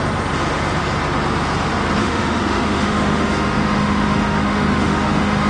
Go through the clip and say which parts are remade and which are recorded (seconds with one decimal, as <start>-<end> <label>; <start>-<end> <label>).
0.0-2.0 recorded; 2.0-5.5 remade